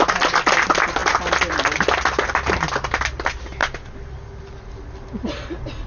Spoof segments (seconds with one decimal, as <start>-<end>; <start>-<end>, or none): none